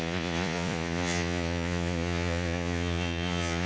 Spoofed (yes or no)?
yes